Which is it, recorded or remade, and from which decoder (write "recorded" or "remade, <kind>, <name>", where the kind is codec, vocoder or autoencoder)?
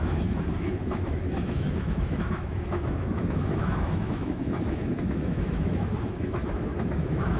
remade, autoencoder, DAC-VAE